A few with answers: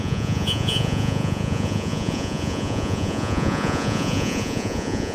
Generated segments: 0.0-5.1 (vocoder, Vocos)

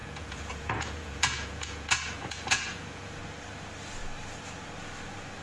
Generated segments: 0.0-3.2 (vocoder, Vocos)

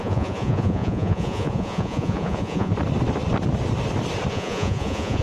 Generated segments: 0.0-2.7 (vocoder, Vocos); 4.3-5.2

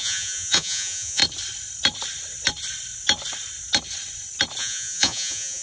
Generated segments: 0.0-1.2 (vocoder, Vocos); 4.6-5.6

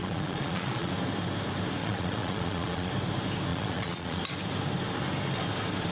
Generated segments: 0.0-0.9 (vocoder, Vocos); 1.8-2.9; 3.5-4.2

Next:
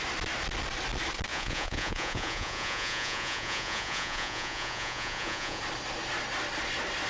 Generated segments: 1.3-5.6 (vocoder, Vocos)

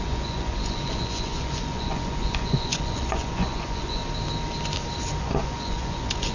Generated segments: 0.0-4.0 (vocoder, Vocos); 5.2-6.3

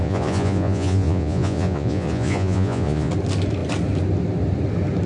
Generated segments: 0.0-3.1 (vocoder, Vocos)